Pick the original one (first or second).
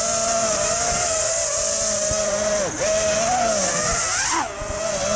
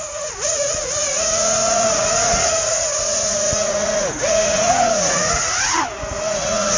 first